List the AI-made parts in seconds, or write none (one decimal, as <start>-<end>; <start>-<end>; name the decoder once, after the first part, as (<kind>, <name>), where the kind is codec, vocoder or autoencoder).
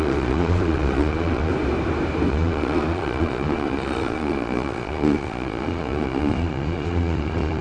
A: 0.0-1.5 (vocoder, Vocos); 2.3-7.6